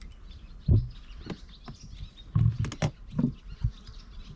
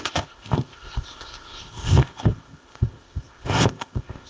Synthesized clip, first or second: second